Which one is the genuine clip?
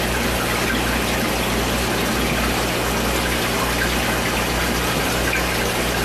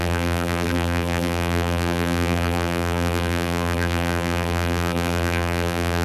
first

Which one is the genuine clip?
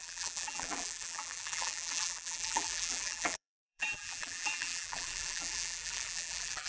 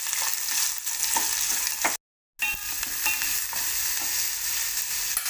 second